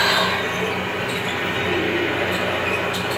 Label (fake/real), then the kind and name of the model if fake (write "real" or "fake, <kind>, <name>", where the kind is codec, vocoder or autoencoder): real